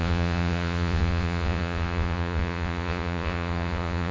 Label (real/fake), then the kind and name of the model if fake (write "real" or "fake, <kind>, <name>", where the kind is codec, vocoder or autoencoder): fake, vocoder, Vocos